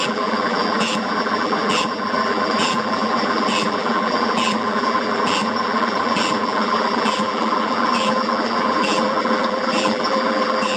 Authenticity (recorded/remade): remade